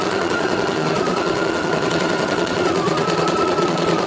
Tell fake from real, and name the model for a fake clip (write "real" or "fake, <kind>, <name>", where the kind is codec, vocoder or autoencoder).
fake, vocoder, Vocos